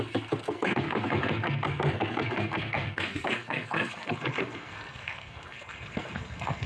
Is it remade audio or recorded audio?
remade